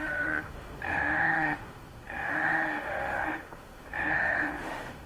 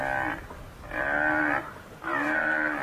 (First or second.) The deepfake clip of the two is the first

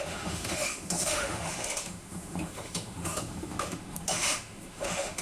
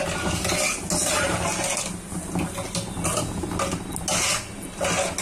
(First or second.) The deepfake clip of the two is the first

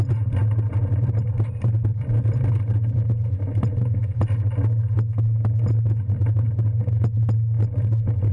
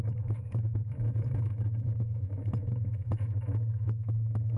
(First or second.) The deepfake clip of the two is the second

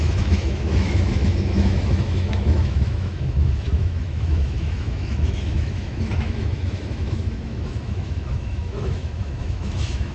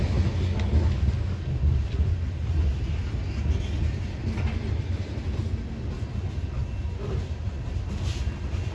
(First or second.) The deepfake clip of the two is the first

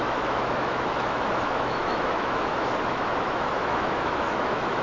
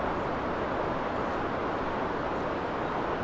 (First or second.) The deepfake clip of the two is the first